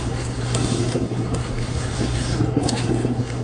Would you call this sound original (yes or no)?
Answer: no